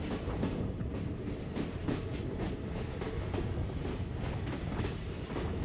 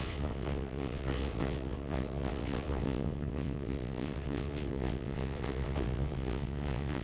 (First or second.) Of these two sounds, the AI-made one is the second